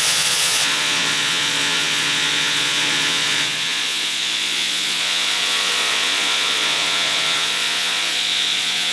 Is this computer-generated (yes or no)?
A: yes